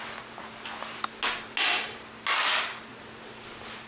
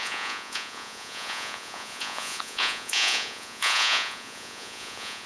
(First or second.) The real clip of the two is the first